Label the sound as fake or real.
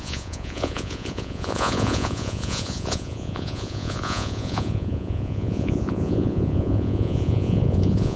fake